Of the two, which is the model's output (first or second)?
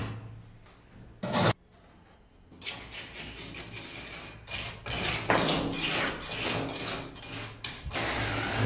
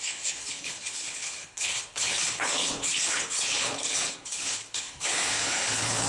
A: second